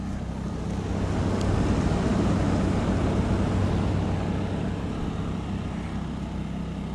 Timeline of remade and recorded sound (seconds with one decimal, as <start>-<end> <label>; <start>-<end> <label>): 0.0-6.9 recorded